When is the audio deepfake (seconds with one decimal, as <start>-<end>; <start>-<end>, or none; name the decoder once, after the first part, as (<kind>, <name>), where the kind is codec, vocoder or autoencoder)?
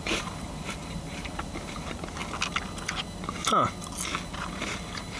0.0-2.2 (vocoder, BigVGAN v2); 4.4-5.2